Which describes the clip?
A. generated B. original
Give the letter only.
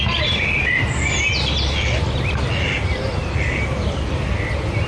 B